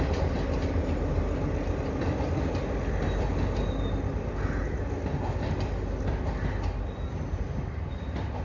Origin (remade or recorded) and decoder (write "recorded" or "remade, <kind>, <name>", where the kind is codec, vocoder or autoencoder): recorded